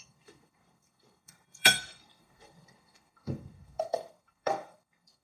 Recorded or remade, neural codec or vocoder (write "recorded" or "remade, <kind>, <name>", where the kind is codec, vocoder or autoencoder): remade, codec, SNAC